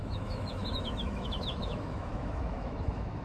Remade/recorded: remade